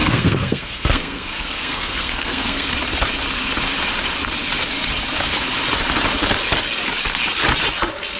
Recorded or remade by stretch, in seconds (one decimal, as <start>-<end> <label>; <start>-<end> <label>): 0.0-2.7 remade; 2.7-8.2 recorded